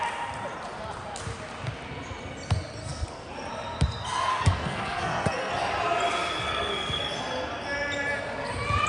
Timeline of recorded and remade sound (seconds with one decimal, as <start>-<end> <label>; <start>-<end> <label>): 0.0-2.8 recorded; 2.8-3.3 remade; 3.3-4.3 recorded; 4.3-5.5 remade; 5.5-6.4 recorded; 6.4-7.0 remade; 7.0-8.9 recorded